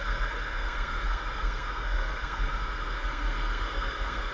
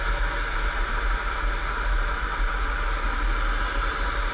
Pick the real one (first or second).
second